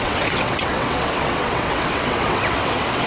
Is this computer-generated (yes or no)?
yes